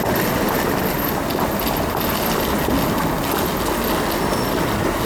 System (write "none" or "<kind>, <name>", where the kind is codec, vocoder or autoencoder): none